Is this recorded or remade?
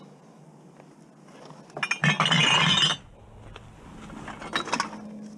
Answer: recorded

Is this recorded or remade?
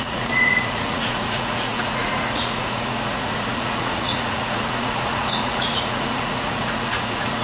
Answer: remade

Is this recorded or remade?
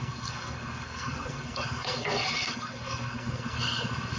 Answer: remade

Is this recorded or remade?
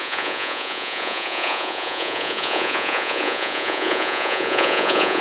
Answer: remade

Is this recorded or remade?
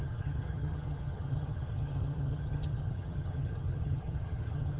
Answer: remade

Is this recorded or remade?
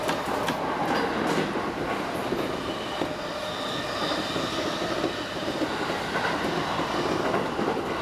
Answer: recorded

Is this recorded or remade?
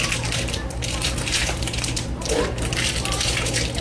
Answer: remade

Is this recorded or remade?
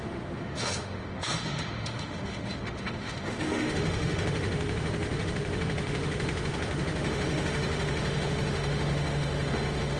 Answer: remade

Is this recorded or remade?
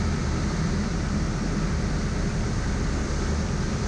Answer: recorded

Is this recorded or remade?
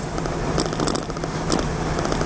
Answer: recorded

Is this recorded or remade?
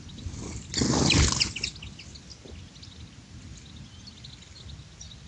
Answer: recorded